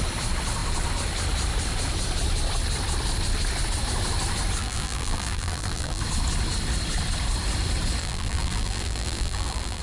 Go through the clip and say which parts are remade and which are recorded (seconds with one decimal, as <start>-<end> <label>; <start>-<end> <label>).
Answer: 0.0-4.6 recorded; 4.6-6.0 remade; 6.0-8.0 recorded; 8.0-9.8 remade